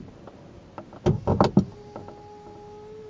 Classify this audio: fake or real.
real